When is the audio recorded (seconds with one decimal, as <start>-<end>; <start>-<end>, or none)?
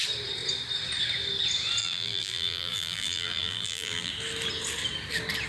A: 0.0-1.8; 4.1-5.5